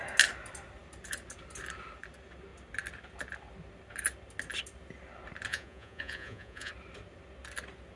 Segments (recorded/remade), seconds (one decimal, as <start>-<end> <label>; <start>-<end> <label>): 0.0-5.5 recorded; 5.5-6.7 remade; 6.7-8.0 recorded